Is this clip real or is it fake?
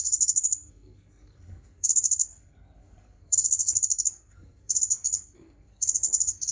fake